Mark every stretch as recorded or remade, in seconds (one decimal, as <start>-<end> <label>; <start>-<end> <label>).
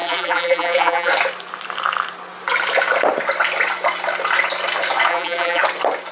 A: 0.0-1.1 remade; 1.1-5.1 recorded; 5.1-5.6 remade; 5.6-6.1 recorded